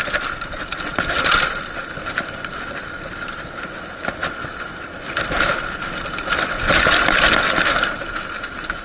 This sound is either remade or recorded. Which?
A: recorded